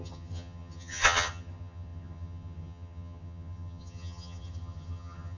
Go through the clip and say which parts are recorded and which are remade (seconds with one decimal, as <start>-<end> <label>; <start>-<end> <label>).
0.0-5.4 remade